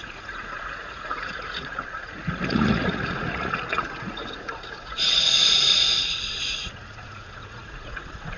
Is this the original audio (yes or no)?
no